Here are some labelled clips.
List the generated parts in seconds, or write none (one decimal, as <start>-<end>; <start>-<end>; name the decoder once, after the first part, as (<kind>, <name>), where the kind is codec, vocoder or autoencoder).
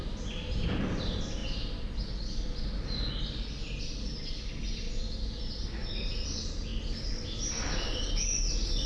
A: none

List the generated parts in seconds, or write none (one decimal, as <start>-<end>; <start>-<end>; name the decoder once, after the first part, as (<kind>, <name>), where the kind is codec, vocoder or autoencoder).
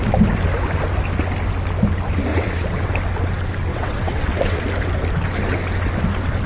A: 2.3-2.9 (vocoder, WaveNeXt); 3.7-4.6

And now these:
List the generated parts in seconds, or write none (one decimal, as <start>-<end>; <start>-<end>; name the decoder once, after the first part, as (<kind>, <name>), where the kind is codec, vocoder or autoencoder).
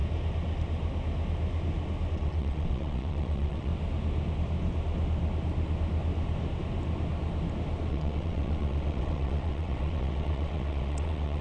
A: 2.1-3.7 (vocoder, WaveNeXt); 7.9-11.4